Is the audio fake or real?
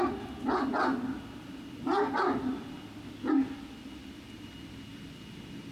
real